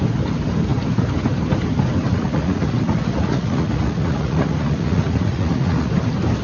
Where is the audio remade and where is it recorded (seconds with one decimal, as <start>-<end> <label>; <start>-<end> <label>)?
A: 0.0-2.1 recorded; 2.1-5.9 remade; 5.9-6.4 recorded